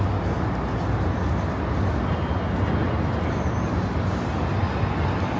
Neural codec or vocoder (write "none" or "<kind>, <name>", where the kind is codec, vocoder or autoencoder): none